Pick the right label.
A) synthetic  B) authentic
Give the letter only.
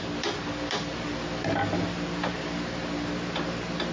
B